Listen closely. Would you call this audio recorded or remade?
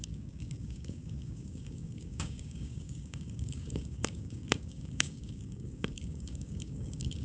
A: remade